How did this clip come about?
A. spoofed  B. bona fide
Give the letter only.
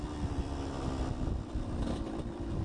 A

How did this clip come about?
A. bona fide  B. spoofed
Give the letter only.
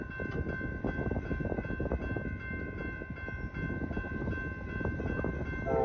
A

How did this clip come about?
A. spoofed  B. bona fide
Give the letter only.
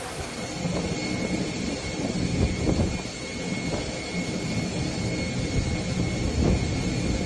B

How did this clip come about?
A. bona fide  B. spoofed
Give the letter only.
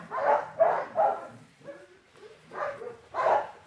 B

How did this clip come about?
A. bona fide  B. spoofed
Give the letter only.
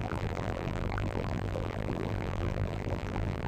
B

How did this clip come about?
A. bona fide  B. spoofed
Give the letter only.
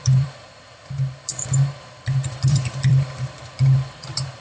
B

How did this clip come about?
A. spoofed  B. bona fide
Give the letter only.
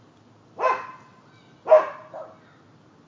B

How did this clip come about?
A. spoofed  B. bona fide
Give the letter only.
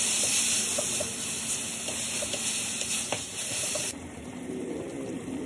A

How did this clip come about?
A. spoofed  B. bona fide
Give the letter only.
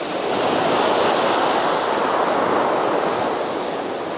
B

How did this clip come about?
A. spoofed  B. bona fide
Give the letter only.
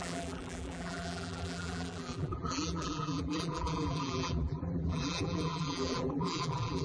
A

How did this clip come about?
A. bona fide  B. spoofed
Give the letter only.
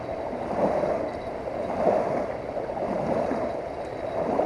A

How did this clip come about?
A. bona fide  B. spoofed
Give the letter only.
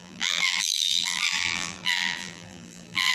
B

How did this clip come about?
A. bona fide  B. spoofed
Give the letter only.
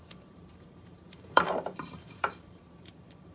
B